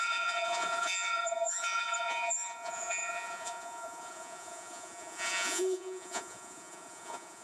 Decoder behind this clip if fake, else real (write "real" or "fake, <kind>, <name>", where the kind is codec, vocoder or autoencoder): fake, vocoder, Vocos